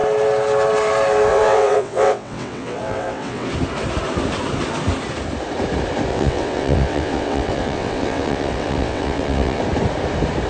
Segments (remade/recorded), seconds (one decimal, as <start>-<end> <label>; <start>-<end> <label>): 0.0-1.3 recorded; 1.3-3.5 remade; 3.5-6.1 recorded; 6.1-9.6 remade; 9.6-10.5 recorded